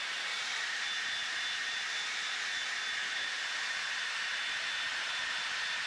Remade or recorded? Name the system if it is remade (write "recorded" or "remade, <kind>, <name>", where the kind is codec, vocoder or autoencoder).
recorded